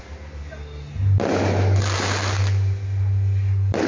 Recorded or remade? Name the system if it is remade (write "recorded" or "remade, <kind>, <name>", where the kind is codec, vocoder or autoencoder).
recorded